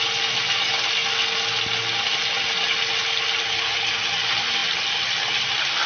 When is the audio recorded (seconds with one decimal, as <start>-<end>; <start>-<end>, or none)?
0.0-5.9